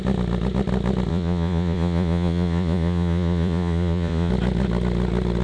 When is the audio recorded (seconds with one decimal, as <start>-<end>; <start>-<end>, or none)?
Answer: 0.0-1.1; 4.3-5.4